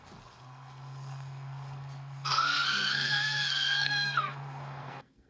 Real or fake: fake